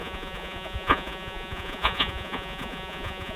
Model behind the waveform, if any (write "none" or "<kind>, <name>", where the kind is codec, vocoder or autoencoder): vocoder, Vocos